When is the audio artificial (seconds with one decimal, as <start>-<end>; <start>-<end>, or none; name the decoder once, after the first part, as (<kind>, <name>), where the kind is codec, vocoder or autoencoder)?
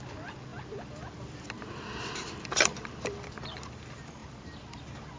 0.5-3.6 (vocoder, BigVGAN v2); 4.2-4.8